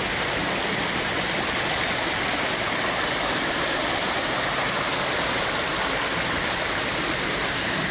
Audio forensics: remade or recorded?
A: recorded